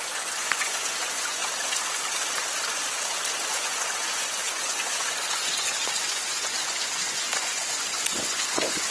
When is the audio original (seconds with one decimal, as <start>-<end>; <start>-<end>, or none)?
1.4-3.5